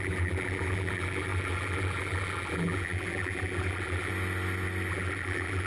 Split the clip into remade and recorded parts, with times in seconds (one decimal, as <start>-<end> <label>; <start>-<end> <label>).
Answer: 0.0-4.1 remade; 4.1-4.9 recorded; 4.9-5.7 remade